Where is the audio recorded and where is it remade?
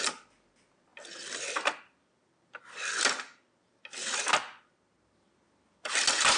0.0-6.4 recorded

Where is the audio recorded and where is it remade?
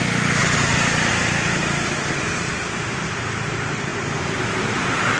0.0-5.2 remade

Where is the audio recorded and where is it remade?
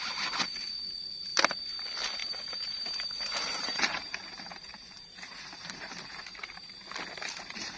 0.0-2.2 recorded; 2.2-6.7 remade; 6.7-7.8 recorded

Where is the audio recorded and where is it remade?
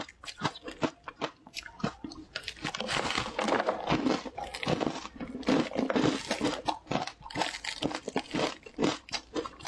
0.0-8.8 recorded; 8.8-9.7 remade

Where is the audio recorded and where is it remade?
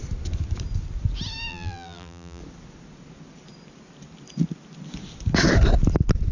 0.0-1.5 recorded; 1.5-2.4 remade; 2.4-6.3 recorded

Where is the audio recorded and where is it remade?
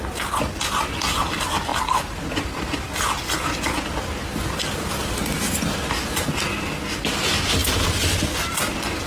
0.0-9.1 recorded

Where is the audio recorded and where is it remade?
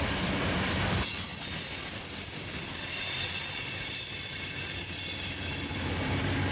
0.0-6.5 recorded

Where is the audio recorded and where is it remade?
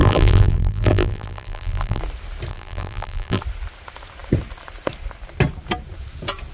0.0-2.0 remade; 2.0-2.5 recorded; 2.5-3.4 remade; 3.4-6.5 recorded